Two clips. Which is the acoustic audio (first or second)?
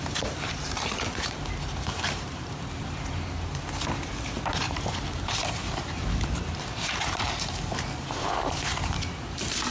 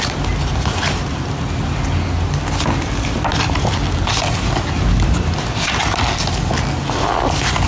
second